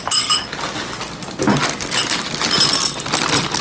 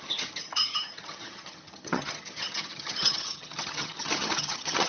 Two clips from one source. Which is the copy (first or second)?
second